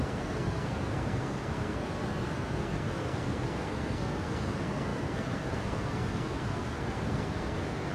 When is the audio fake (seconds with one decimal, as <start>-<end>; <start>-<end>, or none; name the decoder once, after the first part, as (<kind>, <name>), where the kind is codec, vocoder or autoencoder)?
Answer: 0.0-7.9 (codec, SNAC)